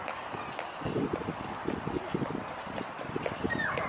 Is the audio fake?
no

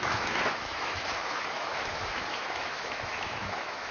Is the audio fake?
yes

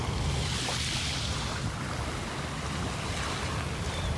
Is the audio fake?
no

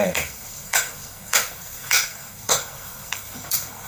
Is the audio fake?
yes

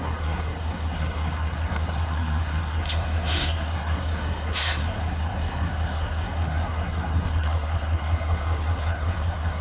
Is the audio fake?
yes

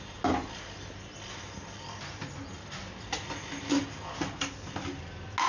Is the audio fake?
no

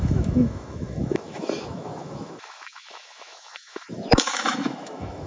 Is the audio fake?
yes